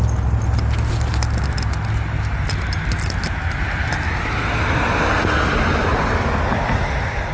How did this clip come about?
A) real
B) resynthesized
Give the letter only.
A